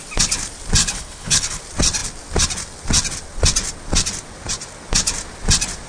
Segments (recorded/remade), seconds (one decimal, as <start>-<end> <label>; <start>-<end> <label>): 0.0-0.8 recorded; 0.8-1.6 remade; 1.6-5.9 recorded